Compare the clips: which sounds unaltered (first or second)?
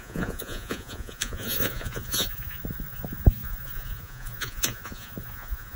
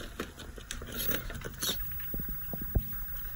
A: second